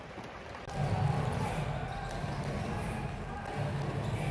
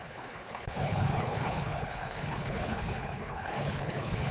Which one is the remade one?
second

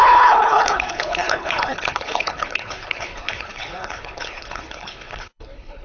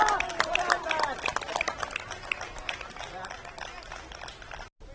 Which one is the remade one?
first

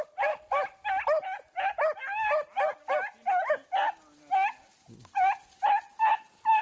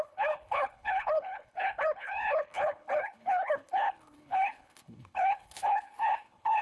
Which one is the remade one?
second